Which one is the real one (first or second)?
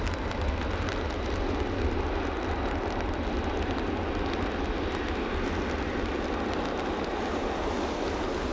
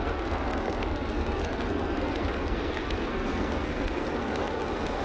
first